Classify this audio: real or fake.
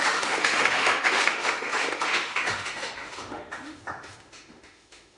fake